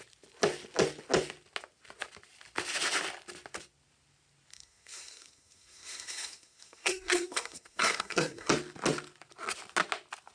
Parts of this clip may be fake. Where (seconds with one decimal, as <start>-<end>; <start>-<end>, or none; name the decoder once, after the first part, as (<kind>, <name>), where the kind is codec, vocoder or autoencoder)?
4.5-8.5 (codec, SNAC)